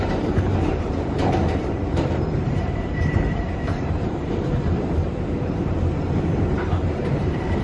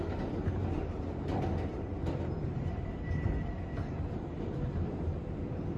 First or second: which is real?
second